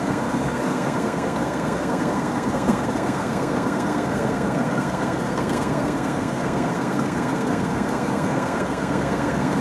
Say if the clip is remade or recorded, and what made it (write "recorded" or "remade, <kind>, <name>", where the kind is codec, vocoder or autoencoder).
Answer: remade, codec, SNAC